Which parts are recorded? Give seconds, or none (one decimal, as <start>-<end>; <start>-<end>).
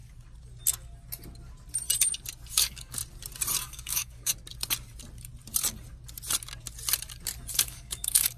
0.0-2.5; 3.0-3.6; 4.3-7.5